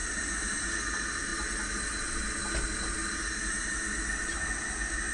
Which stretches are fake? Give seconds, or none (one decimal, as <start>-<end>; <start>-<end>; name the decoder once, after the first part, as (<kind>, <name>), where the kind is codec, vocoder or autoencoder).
0.0-0.7 (vocoder, BigVGAN v2)